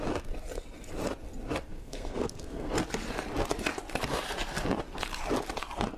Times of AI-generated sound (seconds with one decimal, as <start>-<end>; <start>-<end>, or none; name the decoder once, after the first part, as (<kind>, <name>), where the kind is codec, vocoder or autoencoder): 1.7-2.7 (codec, SNAC)